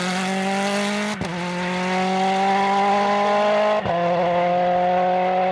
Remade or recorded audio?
recorded